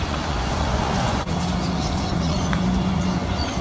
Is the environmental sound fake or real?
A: fake